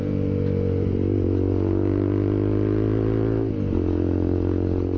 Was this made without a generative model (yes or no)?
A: yes